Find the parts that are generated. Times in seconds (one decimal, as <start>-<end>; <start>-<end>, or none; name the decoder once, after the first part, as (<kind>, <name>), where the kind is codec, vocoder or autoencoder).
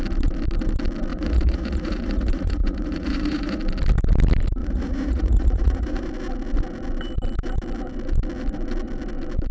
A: 1.1-3.6 (vocoder, Vocos); 4.6-6.1